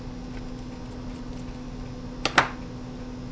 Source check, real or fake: real